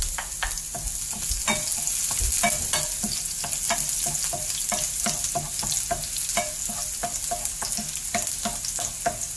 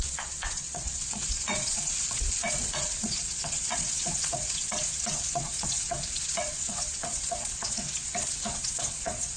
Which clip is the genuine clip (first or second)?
first